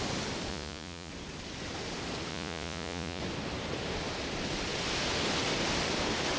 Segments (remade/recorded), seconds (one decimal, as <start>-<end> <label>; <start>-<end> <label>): 0.0-0.5 recorded; 0.5-1.1 remade; 1.1-2.3 recorded; 2.3-3.2 remade; 3.2-6.4 recorded